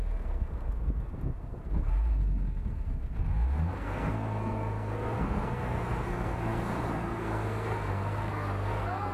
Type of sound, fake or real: fake